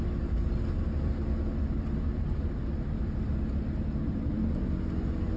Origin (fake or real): real